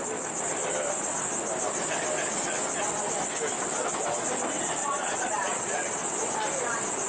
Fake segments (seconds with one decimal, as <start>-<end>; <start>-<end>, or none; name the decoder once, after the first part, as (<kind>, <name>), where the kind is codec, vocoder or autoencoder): 4.8-6.1 (vocoder, Vocos)